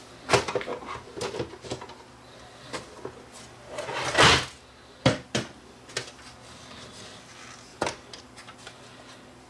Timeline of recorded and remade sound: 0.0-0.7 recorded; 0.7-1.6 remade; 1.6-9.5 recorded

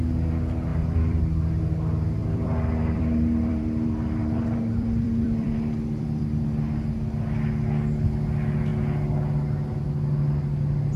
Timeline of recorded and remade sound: 0.0-0.7 recorded; 0.7-1.2 remade; 1.2-2.2 recorded; 2.2-6.4 remade; 6.4-11.0 recorded

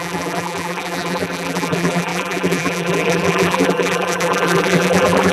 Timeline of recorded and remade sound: 0.0-5.3 remade

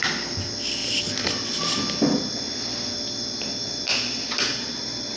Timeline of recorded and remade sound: 0.0-5.2 recorded

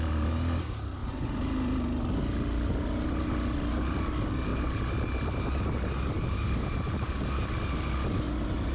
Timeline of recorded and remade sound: 0.0-4.5 recorded; 4.5-7.1 remade; 7.1-8.7 recorded

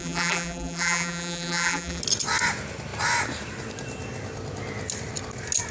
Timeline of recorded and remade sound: 0.0-2.0 remade; 2.0-5.7 recorded

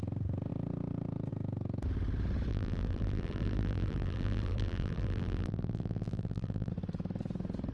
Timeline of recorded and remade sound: 0.0-2.5 recorded; 2.5-6.7 remade; 6.7-7.7 recorded